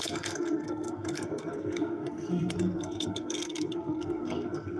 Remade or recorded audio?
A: remade